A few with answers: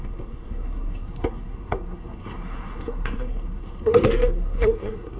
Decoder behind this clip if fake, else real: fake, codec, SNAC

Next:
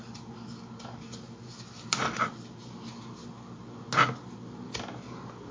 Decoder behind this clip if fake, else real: real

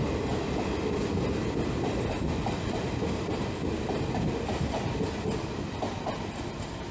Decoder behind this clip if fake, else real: real